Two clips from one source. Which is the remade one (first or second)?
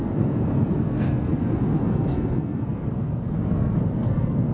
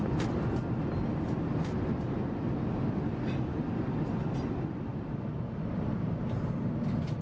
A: first